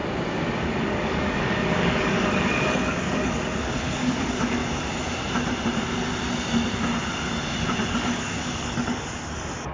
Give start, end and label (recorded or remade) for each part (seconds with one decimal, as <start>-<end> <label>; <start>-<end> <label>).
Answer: 0.0-0.6 recorded; 0.6-4.6 remade; 4.6-7.9 recorded; 7.9-9.7 remade